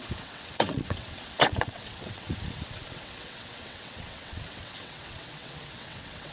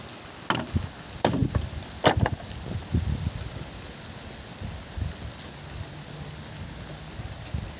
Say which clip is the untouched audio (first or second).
second